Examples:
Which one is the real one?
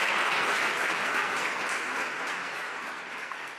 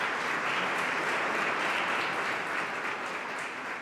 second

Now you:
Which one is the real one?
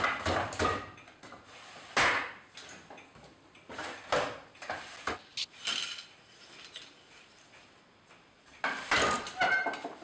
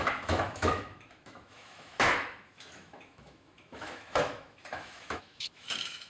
first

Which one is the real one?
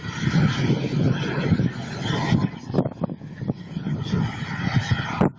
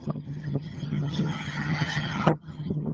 first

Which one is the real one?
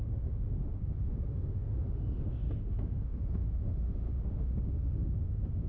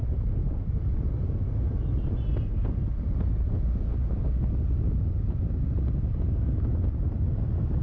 second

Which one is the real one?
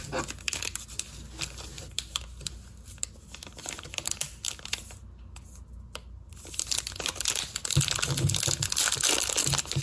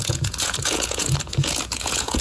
first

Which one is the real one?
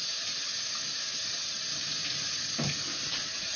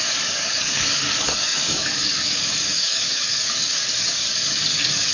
first